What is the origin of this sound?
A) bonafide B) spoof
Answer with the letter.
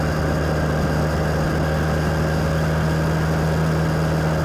A